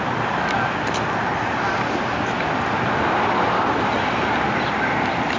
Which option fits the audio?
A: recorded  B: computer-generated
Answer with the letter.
A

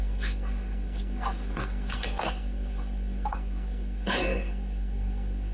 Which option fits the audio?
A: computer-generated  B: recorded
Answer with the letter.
A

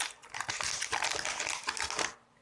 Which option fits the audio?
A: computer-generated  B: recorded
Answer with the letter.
B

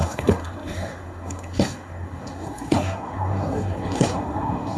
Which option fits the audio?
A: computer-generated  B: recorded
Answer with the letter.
A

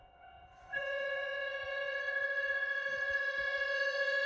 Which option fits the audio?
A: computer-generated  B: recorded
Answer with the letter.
A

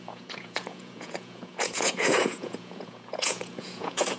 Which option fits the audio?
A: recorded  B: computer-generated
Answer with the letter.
B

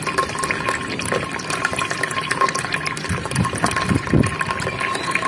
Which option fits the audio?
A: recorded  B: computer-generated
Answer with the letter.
A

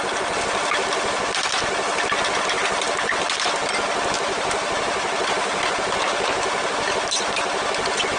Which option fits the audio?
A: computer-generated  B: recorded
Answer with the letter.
B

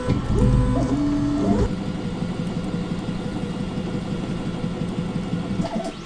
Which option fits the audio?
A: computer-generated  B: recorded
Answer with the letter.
B